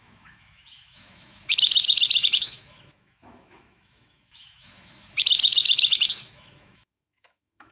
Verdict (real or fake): fake